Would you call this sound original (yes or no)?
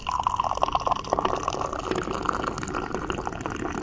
yes